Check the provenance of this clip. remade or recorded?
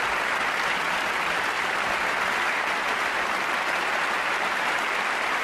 remade